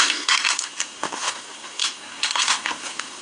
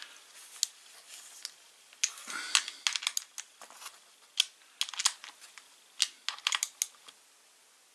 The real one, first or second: second